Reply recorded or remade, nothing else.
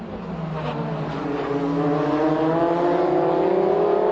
recorded